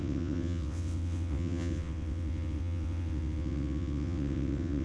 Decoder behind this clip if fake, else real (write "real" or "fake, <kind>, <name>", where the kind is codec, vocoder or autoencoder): fake, vocoder, WaveNeXt